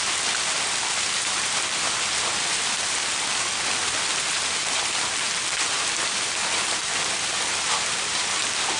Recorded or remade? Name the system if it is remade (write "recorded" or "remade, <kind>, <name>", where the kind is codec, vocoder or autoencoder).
recorded